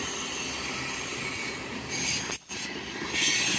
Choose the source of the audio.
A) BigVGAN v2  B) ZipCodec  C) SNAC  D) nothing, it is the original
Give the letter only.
D